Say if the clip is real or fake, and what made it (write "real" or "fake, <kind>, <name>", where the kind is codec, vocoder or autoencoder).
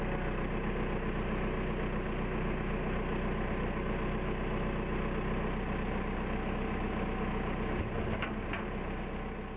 real